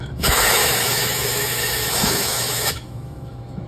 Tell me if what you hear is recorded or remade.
remade